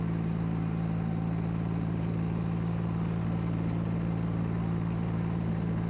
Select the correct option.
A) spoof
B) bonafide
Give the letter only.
B